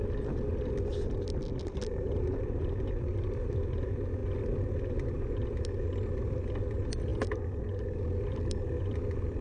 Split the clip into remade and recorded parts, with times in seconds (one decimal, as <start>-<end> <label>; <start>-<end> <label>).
0.0-9.4 recorded